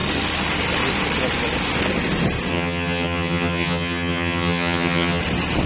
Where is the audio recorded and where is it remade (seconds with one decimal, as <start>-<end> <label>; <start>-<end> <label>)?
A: 0.0-2.5 recorded; 2.5-5.2 remade; 5.2-5.7 recorded